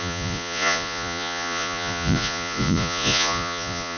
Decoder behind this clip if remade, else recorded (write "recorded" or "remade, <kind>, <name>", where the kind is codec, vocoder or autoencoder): remade, vocoder, Vocos